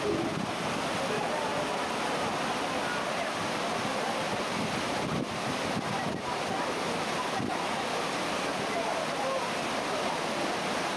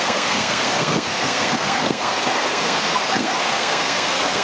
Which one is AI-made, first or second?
second